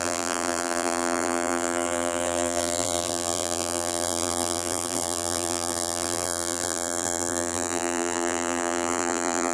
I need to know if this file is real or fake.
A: fake